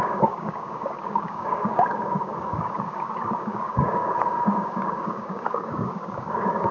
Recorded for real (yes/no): no